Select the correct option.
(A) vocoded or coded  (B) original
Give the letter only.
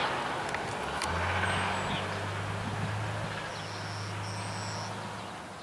B